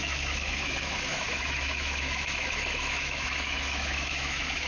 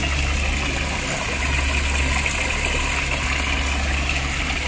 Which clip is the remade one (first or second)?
first